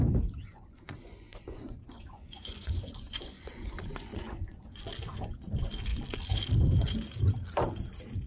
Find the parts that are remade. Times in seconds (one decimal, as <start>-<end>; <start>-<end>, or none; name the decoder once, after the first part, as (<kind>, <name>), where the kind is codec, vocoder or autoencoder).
0.5-4.8 (vocoder, Vocos)